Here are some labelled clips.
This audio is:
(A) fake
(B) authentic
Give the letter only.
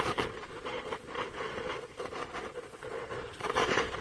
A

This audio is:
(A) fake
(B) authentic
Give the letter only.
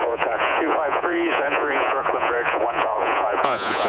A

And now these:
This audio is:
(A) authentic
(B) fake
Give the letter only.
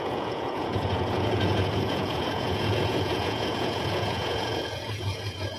B